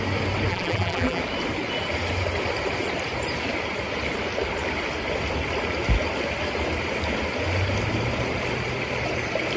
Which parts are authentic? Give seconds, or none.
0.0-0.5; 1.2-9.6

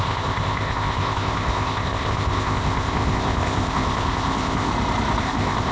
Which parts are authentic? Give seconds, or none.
4.7-5.2

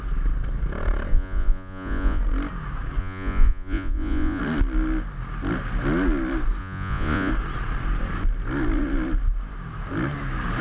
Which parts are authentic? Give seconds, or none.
0.0-1.1; 2.2-3.0; 4.4-6.6; 7.3-10.6

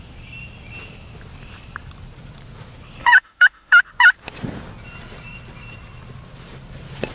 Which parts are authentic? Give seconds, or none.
0.0-3.0; 3.8-7.1